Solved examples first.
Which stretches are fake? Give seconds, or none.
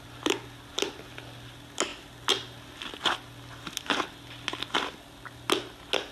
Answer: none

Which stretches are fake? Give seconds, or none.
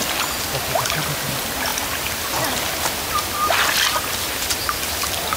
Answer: none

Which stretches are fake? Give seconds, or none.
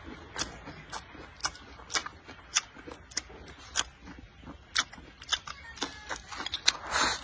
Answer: none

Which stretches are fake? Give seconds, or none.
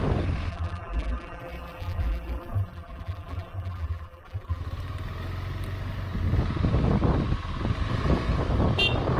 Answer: 0.5-4.6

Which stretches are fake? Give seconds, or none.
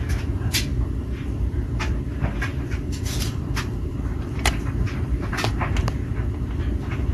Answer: 2.5-5.5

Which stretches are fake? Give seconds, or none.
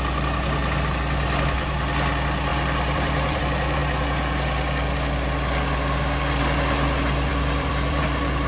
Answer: 2.5-3.4; 7.3-8.0